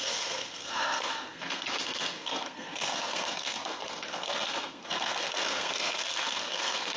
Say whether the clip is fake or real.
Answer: fake